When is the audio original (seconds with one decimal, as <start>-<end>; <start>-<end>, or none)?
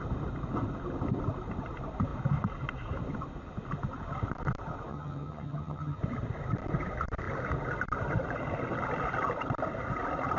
0.0-4.9; 6.0-10.4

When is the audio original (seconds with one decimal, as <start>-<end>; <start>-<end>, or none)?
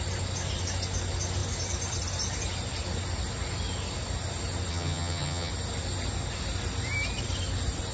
0.0-4.7; 5.5-7.9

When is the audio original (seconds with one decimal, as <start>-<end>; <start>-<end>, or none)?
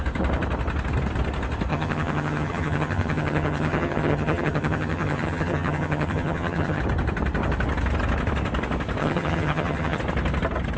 0.0-1.7; 6.8-9.0; 10.0-10.8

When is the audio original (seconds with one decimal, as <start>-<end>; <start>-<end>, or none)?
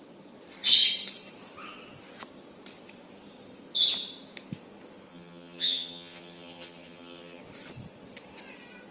0.0-5.1; 7.4-8.9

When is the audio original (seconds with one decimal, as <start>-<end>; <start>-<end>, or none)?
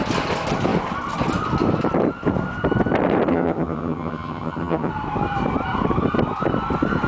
0.0-3.3; 4.9-7.1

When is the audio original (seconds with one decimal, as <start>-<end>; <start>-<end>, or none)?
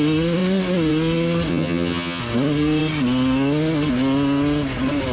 0.0-1.5; 2.2-5.1